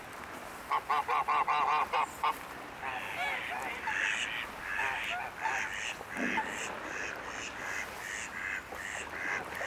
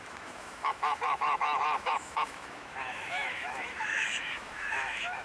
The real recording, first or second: first